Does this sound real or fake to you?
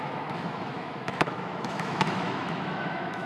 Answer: fake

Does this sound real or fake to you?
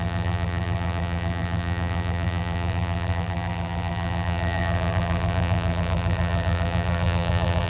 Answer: fake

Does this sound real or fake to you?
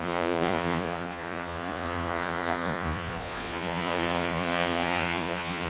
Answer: fake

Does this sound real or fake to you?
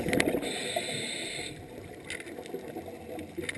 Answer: real